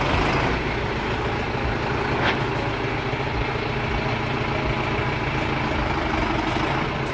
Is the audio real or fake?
real